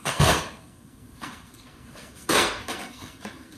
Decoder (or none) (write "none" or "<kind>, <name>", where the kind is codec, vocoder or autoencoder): codec, SNAC